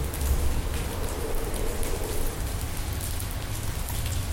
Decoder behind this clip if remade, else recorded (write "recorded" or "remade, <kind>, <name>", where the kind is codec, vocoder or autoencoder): recorded